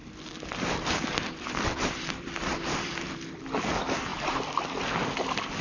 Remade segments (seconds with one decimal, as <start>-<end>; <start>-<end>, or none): 0.0-3.3; 4.1-4.8